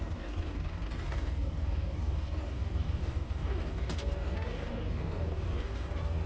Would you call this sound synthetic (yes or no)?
yes